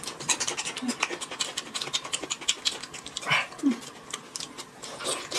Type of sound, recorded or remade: recorded